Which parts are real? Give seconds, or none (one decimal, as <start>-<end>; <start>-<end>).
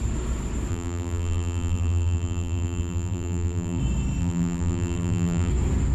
0.0-0.7; 3.8-4.2; 5.5-5.9